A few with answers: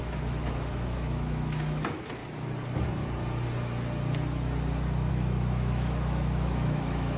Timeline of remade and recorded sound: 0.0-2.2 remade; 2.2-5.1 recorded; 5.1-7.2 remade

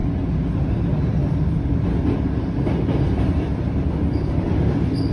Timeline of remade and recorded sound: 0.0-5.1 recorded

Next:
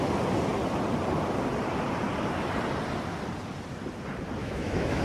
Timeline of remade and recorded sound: 0.0-4.4 recorded; 4.4-5.0 remade